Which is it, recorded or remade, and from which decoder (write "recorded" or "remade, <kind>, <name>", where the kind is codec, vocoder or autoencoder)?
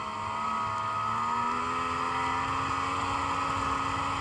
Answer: recorded